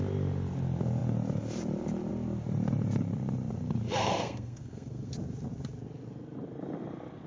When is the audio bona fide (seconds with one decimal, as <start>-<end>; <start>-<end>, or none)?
0.0-4.0; 5.1-7.3